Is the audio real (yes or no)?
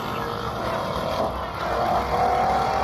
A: yes